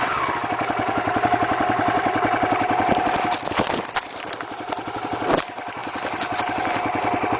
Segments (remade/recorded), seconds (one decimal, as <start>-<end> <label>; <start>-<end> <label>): 0.0-7.4 recorded